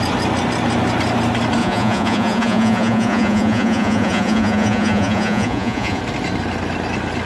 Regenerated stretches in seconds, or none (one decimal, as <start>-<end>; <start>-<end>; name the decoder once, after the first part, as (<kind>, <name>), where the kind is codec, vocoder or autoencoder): 1.6-6.0 (vocoder, Vocos)